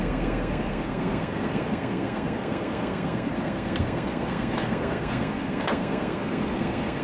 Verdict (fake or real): fake